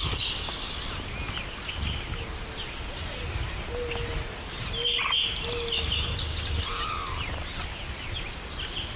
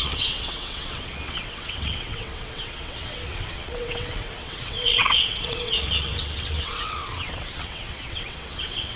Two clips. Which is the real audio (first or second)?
first